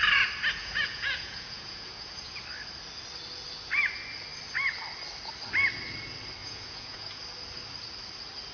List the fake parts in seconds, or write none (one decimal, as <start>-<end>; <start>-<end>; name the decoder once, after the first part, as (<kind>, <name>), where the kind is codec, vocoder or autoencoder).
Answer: 0.6-2.4 (vocoder, Vocos); 6.4-7.2